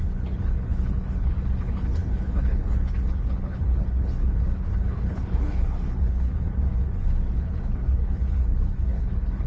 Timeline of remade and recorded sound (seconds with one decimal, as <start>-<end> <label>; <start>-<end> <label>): 0.0-9.5 remade